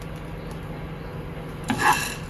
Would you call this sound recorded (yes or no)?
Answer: yes